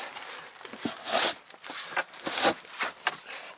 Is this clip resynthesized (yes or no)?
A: no